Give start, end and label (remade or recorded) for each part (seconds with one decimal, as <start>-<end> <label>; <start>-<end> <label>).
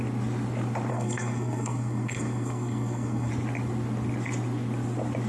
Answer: 0.0-0.9 recorded; 0.9-3.3 remade; 3.3-5.3 recorded